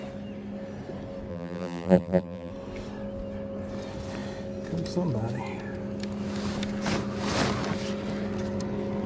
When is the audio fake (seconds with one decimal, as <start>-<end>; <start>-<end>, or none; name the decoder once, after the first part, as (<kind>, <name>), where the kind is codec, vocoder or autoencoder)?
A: 1.3-2.5 (vocoder, BigVGAN v2)

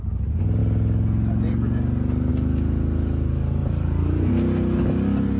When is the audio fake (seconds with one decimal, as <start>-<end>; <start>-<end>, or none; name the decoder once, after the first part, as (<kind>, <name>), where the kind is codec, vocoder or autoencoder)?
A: 3.6-4.3 (vocoder, BigVGAN v2)

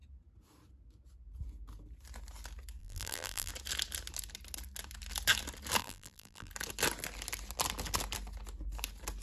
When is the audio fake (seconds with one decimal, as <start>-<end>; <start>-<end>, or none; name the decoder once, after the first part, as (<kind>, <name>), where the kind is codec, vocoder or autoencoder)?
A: 2.8-3.5 (vocoder, BigVGAN v2); 5.8-6.5

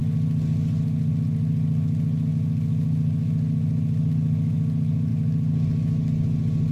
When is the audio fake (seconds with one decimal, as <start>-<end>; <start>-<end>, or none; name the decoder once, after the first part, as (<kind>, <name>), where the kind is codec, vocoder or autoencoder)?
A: none

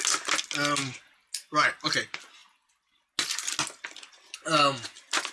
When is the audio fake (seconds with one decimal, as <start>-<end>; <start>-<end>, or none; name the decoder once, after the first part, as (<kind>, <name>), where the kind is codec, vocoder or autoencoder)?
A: none

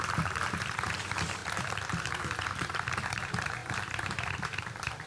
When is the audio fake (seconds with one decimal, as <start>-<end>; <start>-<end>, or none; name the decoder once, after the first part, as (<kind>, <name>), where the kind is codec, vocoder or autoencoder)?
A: 0.0-1.4 (vocoder, BigVGAN v2); 2.1-5.1